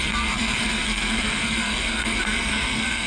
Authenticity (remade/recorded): remade